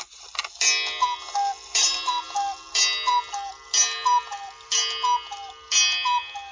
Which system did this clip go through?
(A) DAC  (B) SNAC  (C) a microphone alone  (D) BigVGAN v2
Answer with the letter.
C